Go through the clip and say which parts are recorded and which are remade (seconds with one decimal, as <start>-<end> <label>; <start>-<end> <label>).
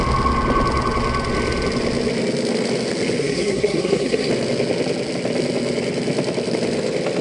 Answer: 0.0-3.2 recorded; 3.2-4.3 remade; 4.3-7.2 recorded